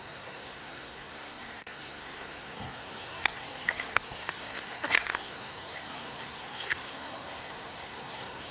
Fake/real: fake